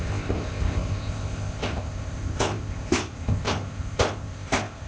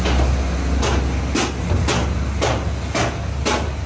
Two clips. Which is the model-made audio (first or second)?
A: first